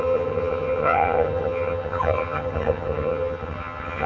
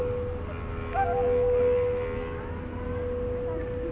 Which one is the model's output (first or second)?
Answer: first